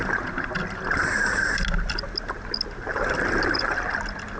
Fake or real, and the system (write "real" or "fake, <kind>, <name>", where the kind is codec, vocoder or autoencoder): real